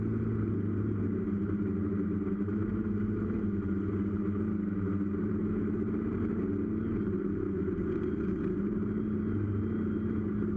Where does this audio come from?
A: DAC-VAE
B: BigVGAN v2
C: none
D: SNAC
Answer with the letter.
C